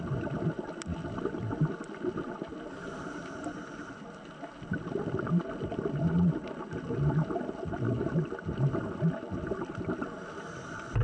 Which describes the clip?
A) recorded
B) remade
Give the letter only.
A